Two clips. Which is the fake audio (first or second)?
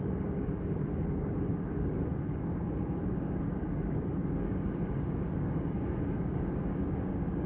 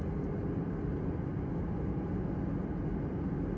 first